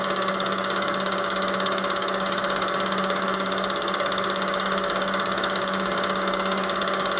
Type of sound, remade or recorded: remade